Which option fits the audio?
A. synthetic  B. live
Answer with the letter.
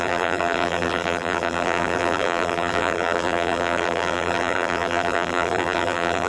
A